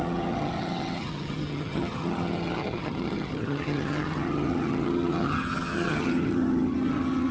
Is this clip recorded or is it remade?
remade